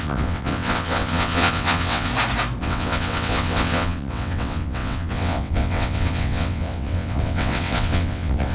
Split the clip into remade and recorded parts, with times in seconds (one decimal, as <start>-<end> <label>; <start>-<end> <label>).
0.0-2.1 remade; 2.1-2.6 recorded; 2.6-8.5 remade